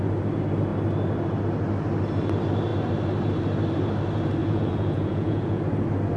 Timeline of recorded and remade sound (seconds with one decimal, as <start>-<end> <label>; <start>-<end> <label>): 0.0-4.4 recorded; 4.4-5.6 remade; 5.6-6.2 recorded